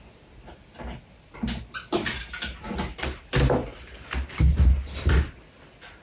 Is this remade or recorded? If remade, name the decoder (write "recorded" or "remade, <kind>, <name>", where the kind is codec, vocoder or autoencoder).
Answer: recorded